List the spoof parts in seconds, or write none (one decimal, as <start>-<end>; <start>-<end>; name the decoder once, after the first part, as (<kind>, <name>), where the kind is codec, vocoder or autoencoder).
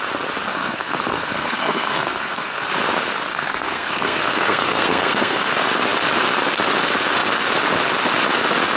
0.5-2.7 (codec, SNAC); 3.3-5.5